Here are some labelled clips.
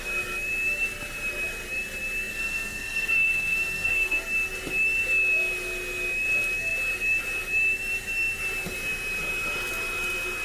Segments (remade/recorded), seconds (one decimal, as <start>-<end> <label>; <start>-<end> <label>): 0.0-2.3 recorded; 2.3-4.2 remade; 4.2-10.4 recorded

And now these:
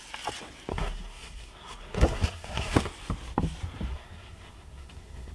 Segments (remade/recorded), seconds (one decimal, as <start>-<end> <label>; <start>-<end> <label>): 0.0-0.7 recorded; 0.7-2.9 remade; 2.9-3.9 recorded; 3.9-5.3 remade

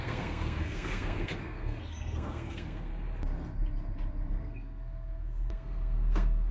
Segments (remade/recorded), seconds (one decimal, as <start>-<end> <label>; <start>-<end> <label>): 0.0-2.9 remade; 2.9-4.3 recorded; 4.3-6.5 remade